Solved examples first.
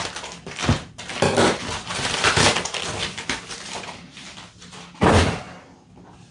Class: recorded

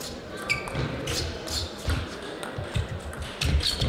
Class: recorded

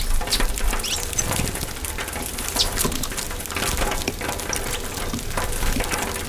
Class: recorded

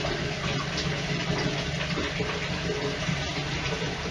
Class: recorded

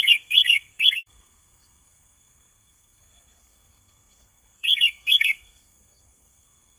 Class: remade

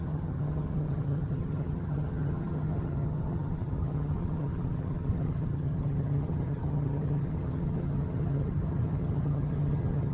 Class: remade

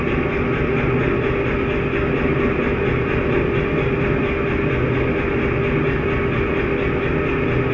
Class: recorded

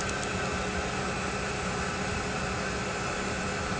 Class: recorded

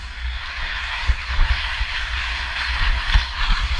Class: remade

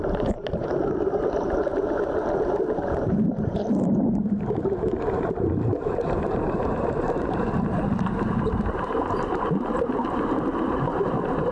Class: remade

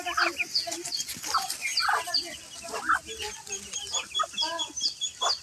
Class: recorded